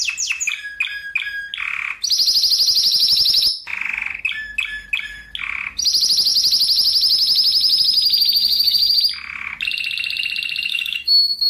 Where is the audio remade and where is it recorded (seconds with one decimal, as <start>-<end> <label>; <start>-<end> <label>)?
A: 0.0-8.4 recorded; 8.4-9.0 remade; 9.0-10.7 recorded; 10.7-11.5 remade